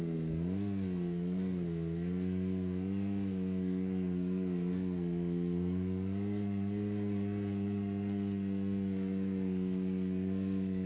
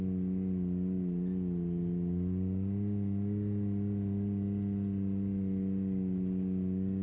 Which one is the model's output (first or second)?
first